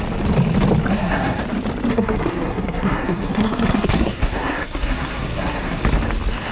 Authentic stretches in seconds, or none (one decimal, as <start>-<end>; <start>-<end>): 0.0-0.9; 1.4-1.9; 5.8-6.5

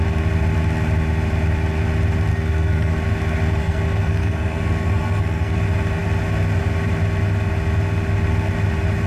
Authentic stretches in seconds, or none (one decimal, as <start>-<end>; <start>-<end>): 0.0-2.3; 2.9-3.6; 5.6-9.1